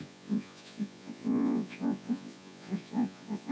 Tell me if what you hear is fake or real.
fake